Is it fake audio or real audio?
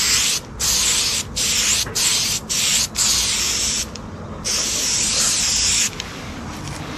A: real